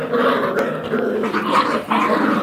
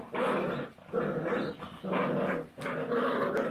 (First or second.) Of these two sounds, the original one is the second